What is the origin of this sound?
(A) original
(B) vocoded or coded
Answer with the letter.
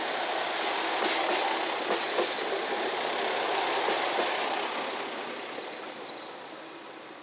A